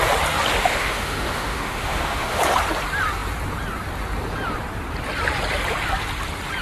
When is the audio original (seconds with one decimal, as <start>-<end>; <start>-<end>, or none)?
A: 0.0-0.6; 2.4-6.6